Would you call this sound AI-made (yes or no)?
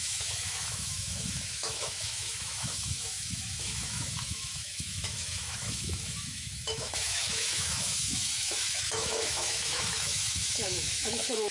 yes